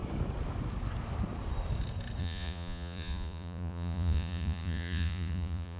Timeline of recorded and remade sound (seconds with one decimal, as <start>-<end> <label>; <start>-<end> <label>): 0.0-2.2 recorded; 2.2-5.8 remade